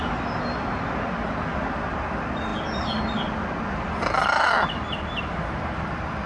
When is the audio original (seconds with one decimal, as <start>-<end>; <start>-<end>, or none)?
0.0-6.3